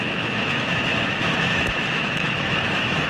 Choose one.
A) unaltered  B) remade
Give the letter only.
B